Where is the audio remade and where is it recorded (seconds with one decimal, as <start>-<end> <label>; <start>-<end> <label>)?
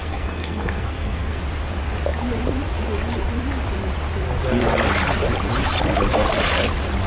0.0-1.4 remade; 1.4-7.1 recorded